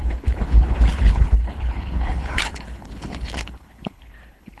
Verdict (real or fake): fake